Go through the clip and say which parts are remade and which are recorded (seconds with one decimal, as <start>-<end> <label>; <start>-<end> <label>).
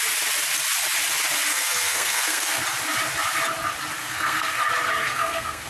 0.0-1.5 recorded; 1.5-2.6 remade; 2.6-4.0 recorded; 4.0-4.6 remade; 4.6-5.0 recorded; 5.0-5.7 remade